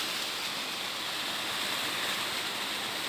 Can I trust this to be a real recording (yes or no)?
yes